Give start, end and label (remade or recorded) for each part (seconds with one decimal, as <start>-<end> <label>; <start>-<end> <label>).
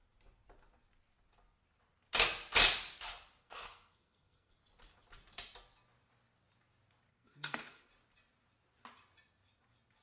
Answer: 0.0-3.4 recorded; 3.4-4.6 remade; 4.6-7.1 recorded; 7.1-7.9 remade; 7.9-10.0 recorded